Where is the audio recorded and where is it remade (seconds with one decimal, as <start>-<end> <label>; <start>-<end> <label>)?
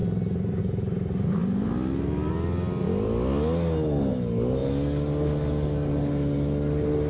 0.0-7.1 recorded